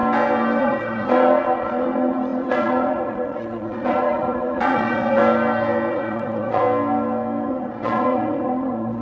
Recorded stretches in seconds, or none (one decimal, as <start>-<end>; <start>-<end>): 0.0-0.6; 5.2-5.9; 6.6-7.5